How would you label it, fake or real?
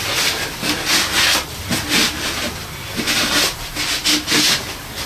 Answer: real